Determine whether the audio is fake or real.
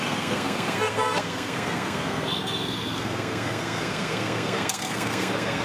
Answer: fake